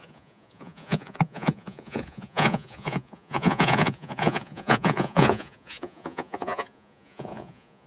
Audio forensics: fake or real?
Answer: fake